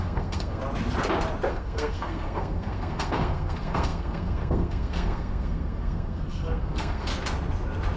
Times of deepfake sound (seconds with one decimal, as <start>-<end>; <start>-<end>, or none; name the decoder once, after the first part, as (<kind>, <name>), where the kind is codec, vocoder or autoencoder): 0.0-0.6 (codec, SNAC); 1.5-7.1